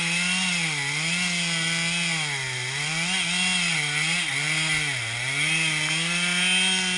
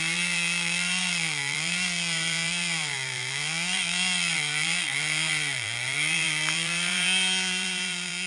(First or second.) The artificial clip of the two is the second